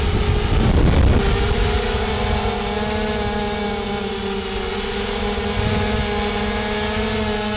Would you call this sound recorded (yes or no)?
yes